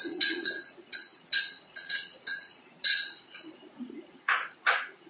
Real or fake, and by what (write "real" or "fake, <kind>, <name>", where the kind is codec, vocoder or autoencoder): fake, vocoder, Vocos